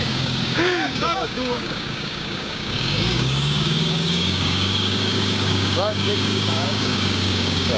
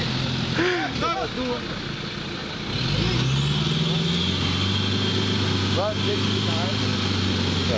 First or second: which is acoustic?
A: second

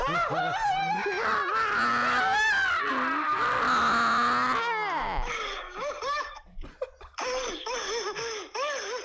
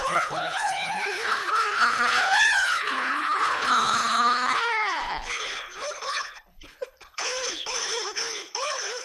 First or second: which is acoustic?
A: first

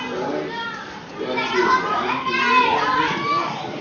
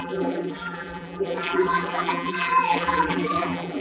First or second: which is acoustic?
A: first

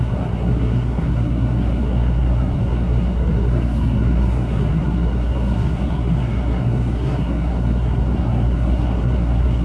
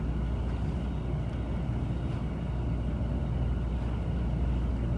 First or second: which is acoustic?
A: second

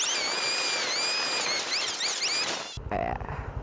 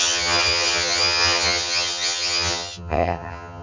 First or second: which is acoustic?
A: first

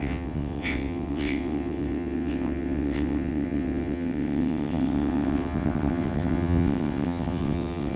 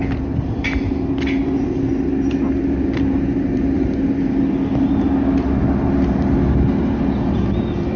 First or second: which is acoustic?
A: second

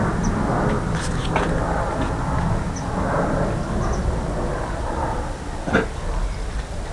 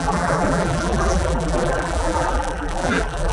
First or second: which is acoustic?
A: first